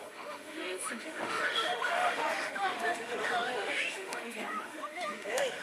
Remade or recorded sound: remade